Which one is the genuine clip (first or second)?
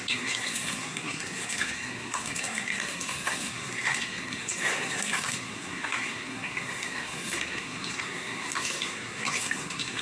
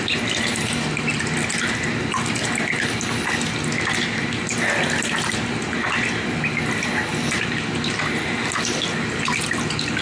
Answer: second